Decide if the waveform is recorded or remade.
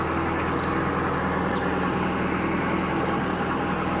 recorded